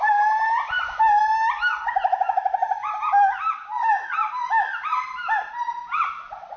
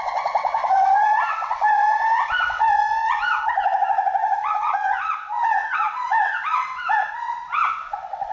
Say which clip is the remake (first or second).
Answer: second